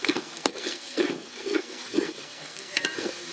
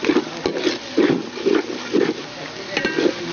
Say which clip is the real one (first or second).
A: second